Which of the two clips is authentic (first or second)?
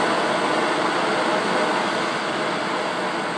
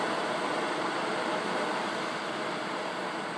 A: first